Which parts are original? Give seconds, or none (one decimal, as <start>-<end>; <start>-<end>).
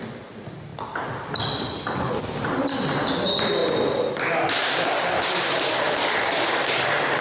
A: 0.0-7.2